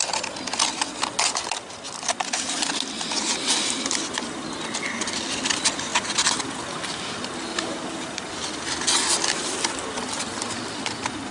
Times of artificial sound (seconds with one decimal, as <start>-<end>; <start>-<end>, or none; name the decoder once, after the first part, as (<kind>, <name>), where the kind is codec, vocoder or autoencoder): none